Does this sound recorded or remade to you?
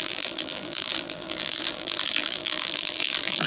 remade